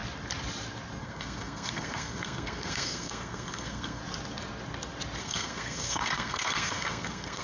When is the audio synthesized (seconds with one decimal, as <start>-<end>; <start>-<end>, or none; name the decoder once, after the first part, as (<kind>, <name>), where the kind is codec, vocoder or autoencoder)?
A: 1.0-4.0 (codec, SNAC); 5.2-7.4